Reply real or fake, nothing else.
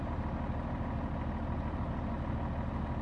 real